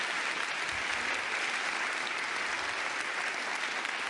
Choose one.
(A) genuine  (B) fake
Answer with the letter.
A